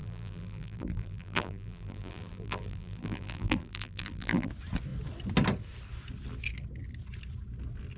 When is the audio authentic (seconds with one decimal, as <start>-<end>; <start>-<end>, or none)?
4.5-8.0